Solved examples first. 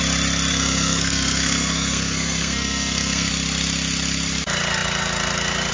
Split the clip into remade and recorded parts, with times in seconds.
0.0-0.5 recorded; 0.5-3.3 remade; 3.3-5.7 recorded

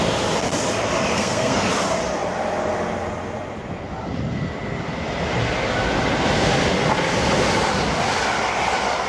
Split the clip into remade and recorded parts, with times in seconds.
0.0-1.1 recorded; 1.1-1.7 remade; 1.7-9.1 recorded

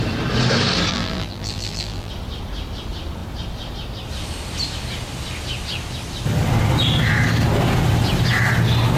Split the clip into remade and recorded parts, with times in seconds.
0.0-0.9 recorded; 0.9-2.1 remade; 2.1-9.0 recorded

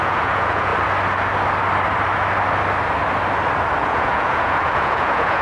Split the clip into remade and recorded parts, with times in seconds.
0.0-0.7 remade; 0.7-3.8 recorded; 3.8-5.4 remade

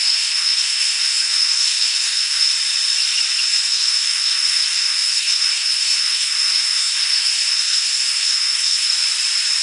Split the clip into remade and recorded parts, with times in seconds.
0.0-2.5 remade; 2.5-3.4 recorded; 3.4-8.9 remade; 8.9-9.6 recorded

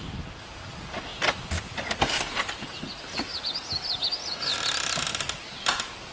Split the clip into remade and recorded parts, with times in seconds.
0.0-1.1 recorded; 1.1-3.4 remade; 3.4-6.1 recorded

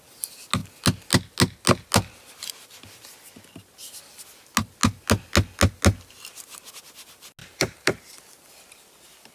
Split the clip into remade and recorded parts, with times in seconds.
0.0-7.4 recorded; 7.4-8.2 remade; 8.2-9.3 recorded

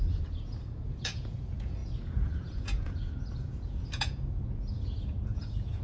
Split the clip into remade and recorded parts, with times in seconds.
0.0-5.8 remade